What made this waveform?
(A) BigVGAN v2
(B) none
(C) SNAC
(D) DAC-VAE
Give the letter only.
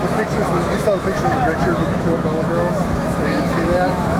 D